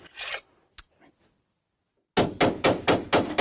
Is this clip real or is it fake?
real